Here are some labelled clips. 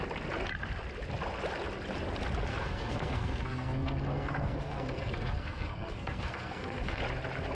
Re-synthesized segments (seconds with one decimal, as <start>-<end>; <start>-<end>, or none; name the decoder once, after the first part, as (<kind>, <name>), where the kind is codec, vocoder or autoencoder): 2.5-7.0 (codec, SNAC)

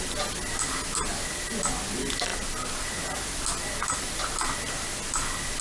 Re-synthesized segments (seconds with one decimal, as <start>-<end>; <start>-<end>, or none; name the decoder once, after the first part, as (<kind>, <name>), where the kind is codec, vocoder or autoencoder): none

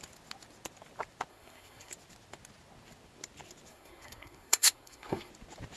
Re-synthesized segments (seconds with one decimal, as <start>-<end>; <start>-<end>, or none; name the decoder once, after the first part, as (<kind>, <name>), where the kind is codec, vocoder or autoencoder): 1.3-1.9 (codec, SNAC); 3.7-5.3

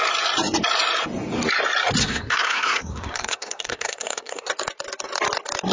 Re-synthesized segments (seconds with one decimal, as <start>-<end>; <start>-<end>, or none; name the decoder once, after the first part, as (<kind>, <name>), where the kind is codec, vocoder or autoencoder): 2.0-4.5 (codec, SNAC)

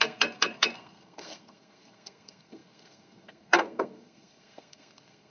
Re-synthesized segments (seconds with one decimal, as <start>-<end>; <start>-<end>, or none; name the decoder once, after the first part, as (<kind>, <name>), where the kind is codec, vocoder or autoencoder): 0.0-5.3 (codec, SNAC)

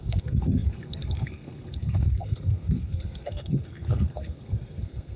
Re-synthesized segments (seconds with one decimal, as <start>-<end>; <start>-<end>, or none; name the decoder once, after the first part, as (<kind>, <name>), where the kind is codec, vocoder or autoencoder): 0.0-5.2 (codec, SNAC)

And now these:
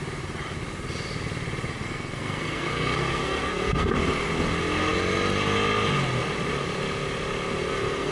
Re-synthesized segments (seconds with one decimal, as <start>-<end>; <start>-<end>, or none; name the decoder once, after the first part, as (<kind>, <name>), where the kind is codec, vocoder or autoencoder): 1.7-3.9 (codec, SNAC); 7.6-8.1